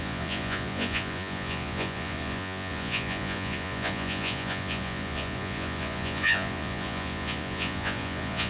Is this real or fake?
fake